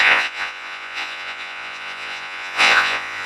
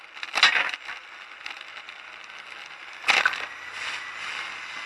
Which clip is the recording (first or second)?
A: second